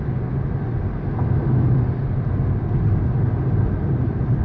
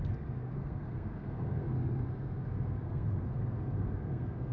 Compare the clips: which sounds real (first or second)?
first